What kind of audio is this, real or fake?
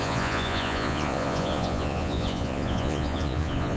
fake